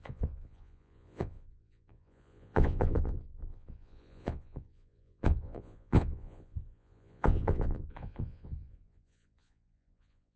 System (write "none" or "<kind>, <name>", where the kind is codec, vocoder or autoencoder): vocoder, Vocos